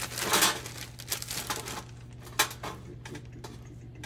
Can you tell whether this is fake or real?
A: real